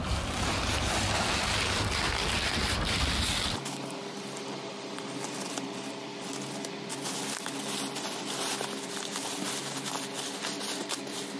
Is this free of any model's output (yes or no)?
yes